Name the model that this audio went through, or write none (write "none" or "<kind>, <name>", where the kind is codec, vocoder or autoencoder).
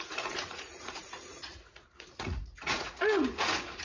vocoder, Vocos